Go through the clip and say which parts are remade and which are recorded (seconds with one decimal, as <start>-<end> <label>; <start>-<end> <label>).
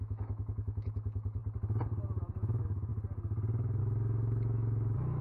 0.0-1.4 remade; 1.4-2.2 recorded; 2.2-2.9 remade; 2.9-3.8 recorded; 3.8-5.2 remade